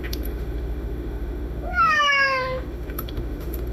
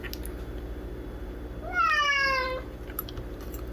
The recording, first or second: second